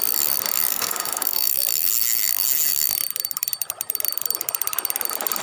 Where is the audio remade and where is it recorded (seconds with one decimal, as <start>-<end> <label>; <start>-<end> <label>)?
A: 0.0-0.7 recorded; 0.7-1.5 remade; 1.5-5.4 recorded

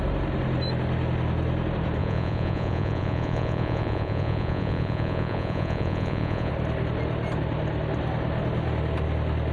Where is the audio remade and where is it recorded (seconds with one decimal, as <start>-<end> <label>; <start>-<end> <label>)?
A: 0.0-2.0 recorded; 2.0-6.5 remade; 6.5-9.5 recorded

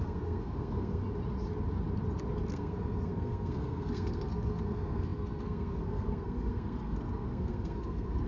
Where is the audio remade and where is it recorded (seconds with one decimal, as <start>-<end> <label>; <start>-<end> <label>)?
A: 0.0-1.0 remade; 1.0-2.5 recorded; 2.5-8.3 remade

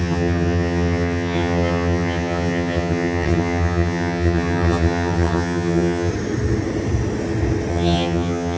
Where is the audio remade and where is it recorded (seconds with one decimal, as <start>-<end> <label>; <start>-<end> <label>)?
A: 0.0-6.1 remade; 6.1-7.7 recorded; 7.7-8.6 remade

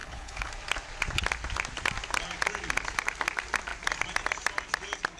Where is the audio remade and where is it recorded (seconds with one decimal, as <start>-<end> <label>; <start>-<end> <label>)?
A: 0.0-0.5 remade; 0.5-5.2 recorded

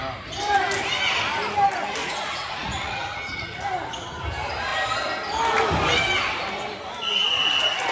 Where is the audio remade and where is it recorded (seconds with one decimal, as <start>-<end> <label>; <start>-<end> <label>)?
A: 0.0-2.0 recorded; 2.0-3.7 remade; 3.7-7.9 recorded